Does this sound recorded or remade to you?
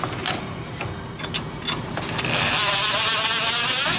recorded